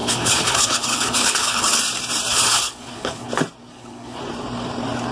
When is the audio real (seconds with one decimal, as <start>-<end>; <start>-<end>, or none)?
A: 1.8-2.3; 3.3-3.7; 4.2-5.1